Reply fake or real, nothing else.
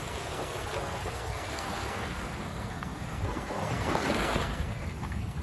fake